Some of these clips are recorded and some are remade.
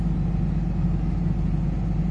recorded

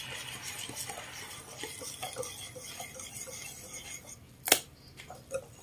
recorded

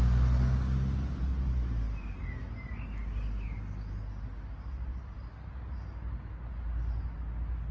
recorded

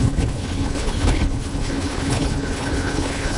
remade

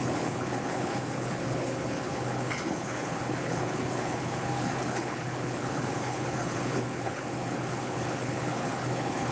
remade